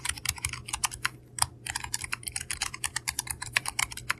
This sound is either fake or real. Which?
fake